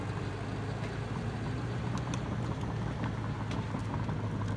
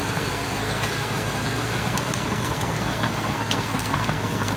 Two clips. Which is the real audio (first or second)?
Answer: first